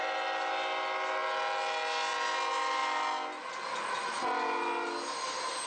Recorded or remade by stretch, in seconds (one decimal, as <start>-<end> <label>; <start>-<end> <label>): 0.0-5.7 recorded

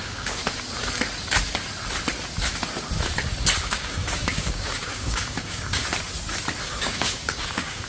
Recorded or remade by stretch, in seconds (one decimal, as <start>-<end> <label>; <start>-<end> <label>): 0.0-0.4 remade; 0.4-3.7 recorded; 3.7-5.8 remade; 5.8-6.6 recorded; 6.6-7.9 remade

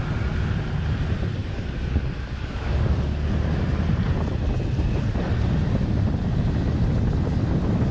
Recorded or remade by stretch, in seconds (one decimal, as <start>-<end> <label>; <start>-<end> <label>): 0.0-1.4 recorded; 1.4-3.3 remade; 3.3-7.9 recorded

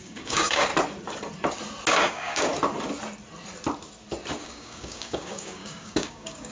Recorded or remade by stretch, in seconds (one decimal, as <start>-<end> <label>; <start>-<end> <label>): 0.0-0.7 remade; 0.7-1.9 recorded; 1.9-2.5 remade; 2.5-4.4 recorded; 4.4-6.5 remade

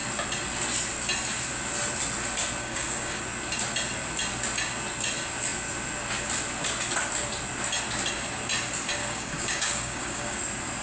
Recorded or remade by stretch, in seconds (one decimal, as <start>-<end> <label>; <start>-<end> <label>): 0.0-2.6 recorded; 2.6-3.2 remade; 3.2-9.0 recorded; 9.0-10.4 remade; 10.4-10.8 recorded